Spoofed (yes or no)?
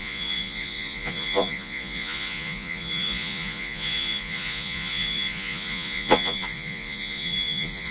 yes